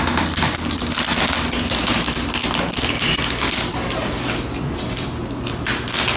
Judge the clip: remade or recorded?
recorded